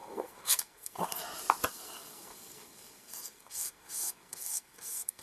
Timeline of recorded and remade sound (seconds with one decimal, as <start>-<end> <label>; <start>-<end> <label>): 0.0-1.2 remade; 1.2-1.7 recorded; 1.7-5.2 remade